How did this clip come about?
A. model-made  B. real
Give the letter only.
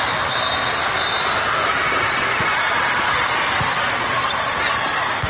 B